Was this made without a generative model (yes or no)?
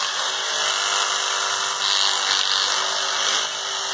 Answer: yes